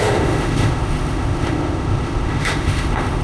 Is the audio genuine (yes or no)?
no